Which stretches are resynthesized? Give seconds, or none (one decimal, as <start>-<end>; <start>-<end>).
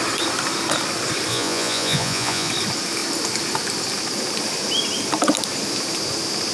1.3-2.5